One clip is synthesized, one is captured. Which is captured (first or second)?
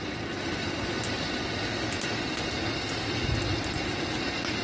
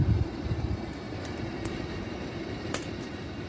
first